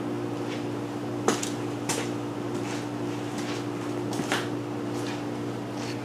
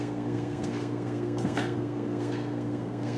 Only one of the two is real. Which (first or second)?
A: first